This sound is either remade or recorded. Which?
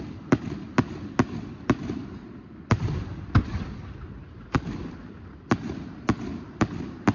recorded